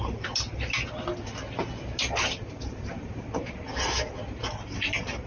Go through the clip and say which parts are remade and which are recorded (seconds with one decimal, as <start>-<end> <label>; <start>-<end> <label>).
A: 0.0-5.3 recorded